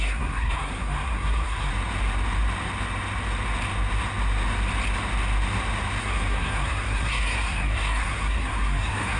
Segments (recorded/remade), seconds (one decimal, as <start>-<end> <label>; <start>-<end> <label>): 0.0-1.7 remade; 1.7-6.0 recorded; 6.0-9.2 remade